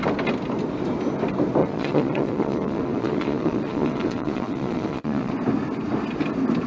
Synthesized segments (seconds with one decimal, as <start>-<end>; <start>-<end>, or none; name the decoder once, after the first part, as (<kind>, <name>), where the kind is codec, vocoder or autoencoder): 1.6-5.3 (vocoder, Vocos)